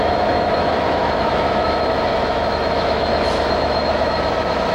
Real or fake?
fake